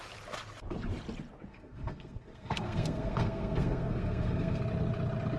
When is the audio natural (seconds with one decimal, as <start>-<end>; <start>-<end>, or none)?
0.0-1.5; 4.6-5.4